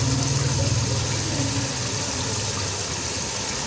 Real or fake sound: real